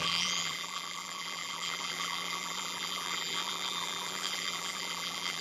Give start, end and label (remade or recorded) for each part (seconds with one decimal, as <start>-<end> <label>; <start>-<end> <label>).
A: 0.0-5.4 remade